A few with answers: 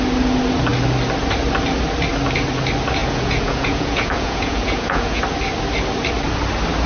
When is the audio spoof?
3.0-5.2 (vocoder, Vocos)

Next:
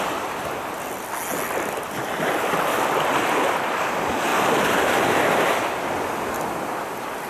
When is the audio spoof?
none